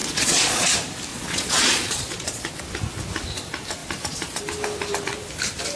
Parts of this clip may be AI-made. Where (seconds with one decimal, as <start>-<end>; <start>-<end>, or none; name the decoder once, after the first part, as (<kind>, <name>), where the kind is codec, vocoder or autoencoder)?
0.0-0.7 (vocoder, Vocos); 1.1-2.6; 3.8-4.4